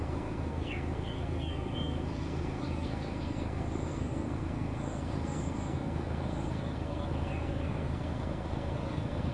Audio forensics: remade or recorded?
remade